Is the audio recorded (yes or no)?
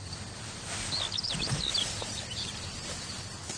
yes